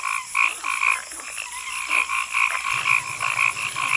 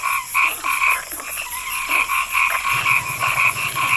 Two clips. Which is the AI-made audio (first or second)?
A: second